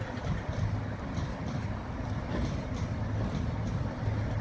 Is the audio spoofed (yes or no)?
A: no